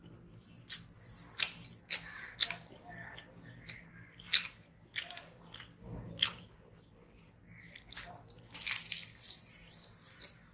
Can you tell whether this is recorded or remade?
recorded